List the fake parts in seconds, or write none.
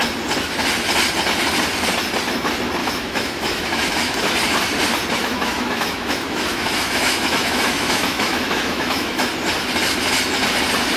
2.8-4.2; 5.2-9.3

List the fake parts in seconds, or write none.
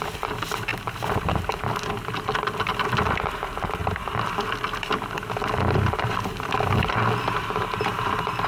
none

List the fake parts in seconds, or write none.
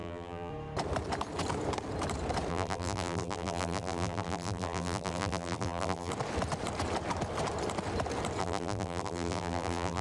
0.0-0.5; 2.5-6.1; 8.4-10.0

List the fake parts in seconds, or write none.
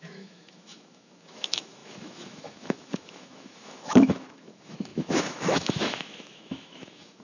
0.0-7.2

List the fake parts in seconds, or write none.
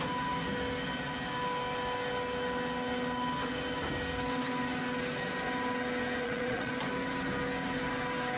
6.2-6.7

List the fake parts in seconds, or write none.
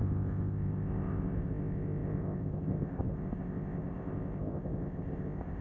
0.0-5.6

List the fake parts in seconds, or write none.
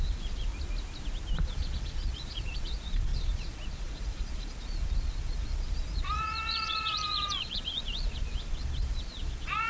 0.0-0.5; 1.4-9.7